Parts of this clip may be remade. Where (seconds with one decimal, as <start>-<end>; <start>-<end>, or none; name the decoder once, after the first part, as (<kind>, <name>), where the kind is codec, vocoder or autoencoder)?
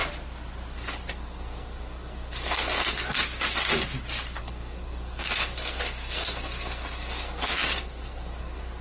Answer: 1.1-3.2 (codec, SNAC); 4.4-8.8